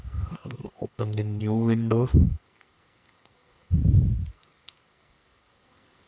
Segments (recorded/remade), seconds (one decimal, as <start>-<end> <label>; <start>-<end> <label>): 0.0-3.8 remade; 3.8-4.3 recorded; 4.3-6.1 remade